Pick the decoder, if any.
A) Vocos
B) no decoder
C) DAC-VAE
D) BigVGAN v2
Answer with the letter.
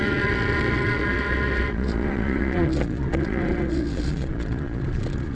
A